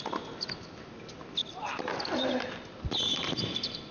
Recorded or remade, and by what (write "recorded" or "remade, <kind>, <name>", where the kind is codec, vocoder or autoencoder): recorded